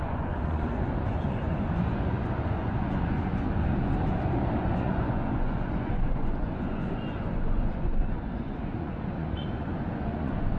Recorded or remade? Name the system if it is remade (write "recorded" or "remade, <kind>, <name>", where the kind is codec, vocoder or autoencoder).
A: remade, vocoder, Vocos